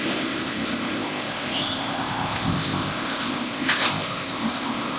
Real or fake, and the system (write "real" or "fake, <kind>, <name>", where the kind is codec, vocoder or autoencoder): fake, codec, ZipCodec